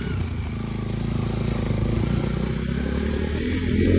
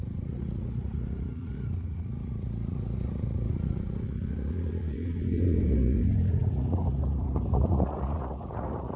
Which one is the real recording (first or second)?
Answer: first